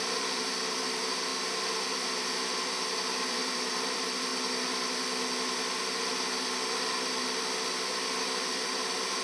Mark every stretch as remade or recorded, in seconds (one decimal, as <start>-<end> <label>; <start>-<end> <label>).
0.0-1.3 remade; 1.3-1.9 recorded; 1.9-4.3 remade; 4.3-7.7 recorded; 7.7-9.2 remade